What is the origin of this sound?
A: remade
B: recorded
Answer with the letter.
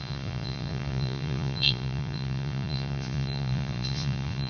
A